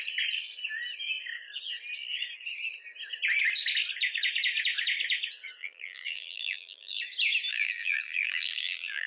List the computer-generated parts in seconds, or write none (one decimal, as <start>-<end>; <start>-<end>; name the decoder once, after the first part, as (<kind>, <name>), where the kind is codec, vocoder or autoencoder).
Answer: 5.6-7.0 (vocoder, BigVGAN v2); 7.5-9.1